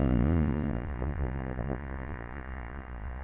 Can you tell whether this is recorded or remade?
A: remade